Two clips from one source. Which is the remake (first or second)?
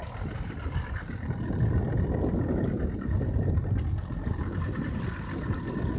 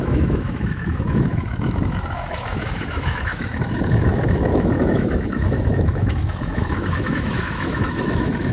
second